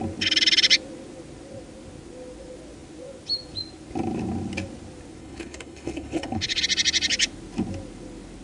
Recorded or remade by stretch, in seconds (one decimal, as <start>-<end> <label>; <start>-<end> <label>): 0.0-5.2 recorded; 5.2-6.6 remade; 6.6-8.4 recorded